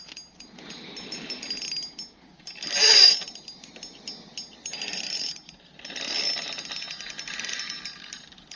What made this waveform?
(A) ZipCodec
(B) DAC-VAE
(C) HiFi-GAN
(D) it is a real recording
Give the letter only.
D